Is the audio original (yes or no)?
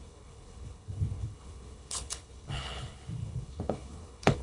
no